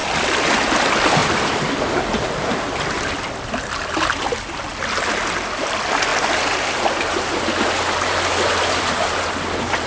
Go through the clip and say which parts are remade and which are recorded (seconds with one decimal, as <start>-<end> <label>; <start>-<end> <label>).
0.0-9.9 recorded

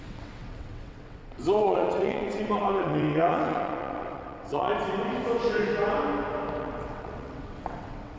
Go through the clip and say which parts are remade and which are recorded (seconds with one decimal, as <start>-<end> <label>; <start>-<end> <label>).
0.0-4.7 remade; 4.7-6.6 recorded; 6.6-8.2 remade

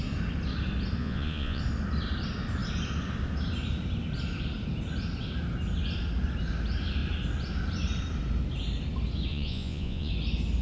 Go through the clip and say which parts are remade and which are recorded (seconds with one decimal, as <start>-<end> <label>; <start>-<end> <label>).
0.0-1.0 recorded; 1.0-1.6 remade; 1.6-9.3 recorded; 9.3-10.1 remade; 10.1-10.6 recorded

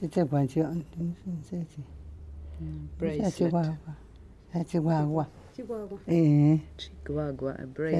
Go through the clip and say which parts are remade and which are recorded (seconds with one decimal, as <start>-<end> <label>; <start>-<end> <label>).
0.0-1.4 recorded; 1.4-2.3 remade; 2.3-2.9 recorded; 2.9-3.5 remade; 3.5-8.0 recorded

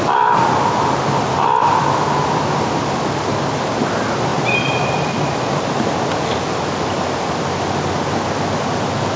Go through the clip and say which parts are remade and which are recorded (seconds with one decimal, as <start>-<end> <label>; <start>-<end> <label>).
0.0-9.2 recorded

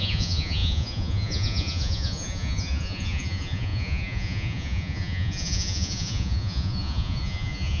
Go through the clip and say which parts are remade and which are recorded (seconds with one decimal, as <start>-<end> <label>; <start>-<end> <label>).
0.0-7.8 remade

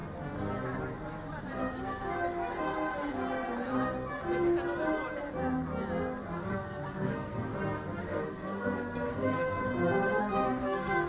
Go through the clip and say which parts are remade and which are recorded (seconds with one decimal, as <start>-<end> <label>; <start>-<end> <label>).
0.0-1.7 recorded; 1.7-2.1 remade; 2.1-6.5 recorded; 6.5-7.5 remade; 7.5-8.0 recorded; 8.0-9.6 remade; 9.6-10.2 recorded; 10.2-11.1 remade

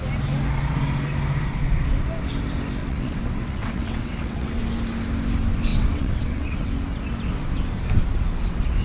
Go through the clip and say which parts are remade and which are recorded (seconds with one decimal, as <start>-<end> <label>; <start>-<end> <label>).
0.0-2.8 recorded; 2.8-4.6 remade; 4.6-5.7 recorded; 5.7-6.7 remade; 6.7-8.8 recorded